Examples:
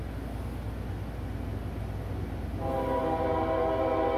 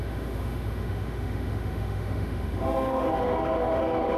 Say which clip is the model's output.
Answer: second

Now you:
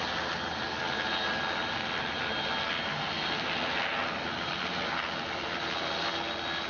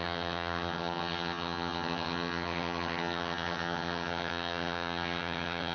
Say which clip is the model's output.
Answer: second